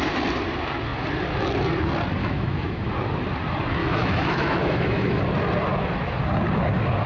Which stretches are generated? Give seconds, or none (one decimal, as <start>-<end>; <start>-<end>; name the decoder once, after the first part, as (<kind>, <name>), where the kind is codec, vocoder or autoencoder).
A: 2.2-2.9 (autoencoder, DAC-VAE); 3.8-5.2